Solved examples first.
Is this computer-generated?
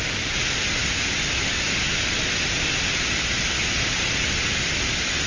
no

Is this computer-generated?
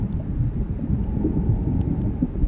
no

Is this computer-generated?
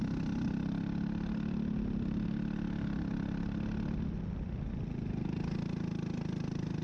no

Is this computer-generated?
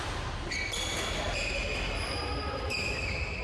no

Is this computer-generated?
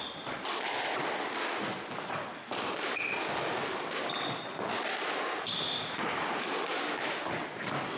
no